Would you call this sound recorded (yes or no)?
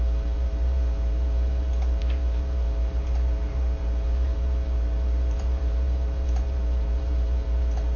no